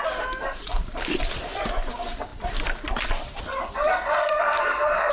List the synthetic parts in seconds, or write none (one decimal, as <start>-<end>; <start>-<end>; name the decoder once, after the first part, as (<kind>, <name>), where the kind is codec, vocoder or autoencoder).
4.2-5.1 (codec, SNAC)